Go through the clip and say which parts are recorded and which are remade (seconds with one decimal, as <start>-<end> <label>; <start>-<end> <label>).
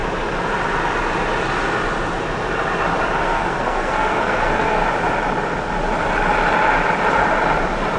0.0-3.2 recorded; 3.2-4.8 remade; 4.8-8.0 recorded